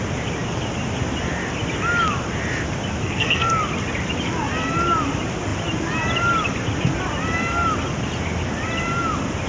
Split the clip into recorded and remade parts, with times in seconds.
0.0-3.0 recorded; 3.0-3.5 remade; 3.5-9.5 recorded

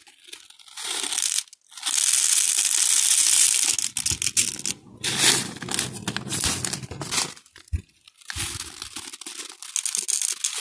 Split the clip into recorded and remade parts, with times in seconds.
0.0-10.6 recorded

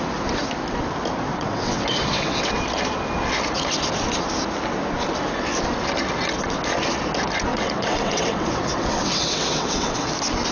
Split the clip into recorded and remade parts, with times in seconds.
0.0-1.3 recorded; 1.3-2.5 remade; 2.5-7.5 recorded; 7.5-10.1 remade; 10.1-10.5 recorded

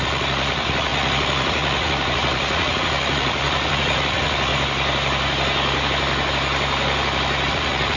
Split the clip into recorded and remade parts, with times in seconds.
0.0-4.5 remade; 4.5-7.5 recorded; 7.5-8.0 remade